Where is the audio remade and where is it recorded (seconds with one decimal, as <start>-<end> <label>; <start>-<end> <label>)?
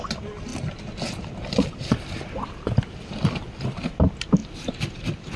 0.0-5.4 recorded